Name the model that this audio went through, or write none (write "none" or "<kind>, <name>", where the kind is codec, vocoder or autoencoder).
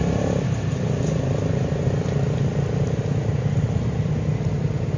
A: none